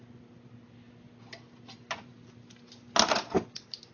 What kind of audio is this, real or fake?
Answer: real